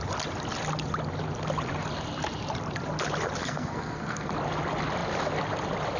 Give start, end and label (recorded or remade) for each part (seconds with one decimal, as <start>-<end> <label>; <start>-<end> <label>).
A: 0.0-3.4 recorded; 3.4-4.3 remade; 4.3-6.0 recorded